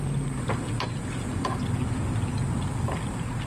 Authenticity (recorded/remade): recorded